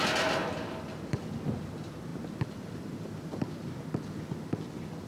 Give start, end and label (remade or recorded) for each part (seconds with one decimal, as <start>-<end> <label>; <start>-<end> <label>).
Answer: 0.0-0.4 recorded; 0.4-1.2 remade; 1.2-2.1 recorded; 2.1-3.7 remade; 3.7-5.1 recorded